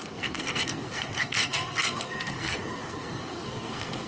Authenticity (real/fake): fake